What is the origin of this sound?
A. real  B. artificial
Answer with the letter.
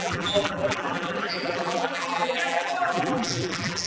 B